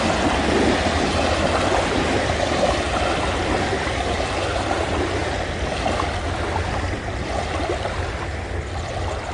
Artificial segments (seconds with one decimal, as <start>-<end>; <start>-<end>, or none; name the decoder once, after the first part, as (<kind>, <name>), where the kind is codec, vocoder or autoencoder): none